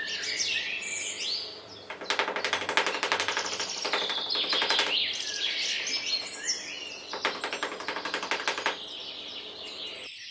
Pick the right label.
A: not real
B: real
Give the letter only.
B